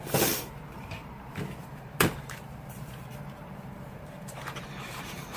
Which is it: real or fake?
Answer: fake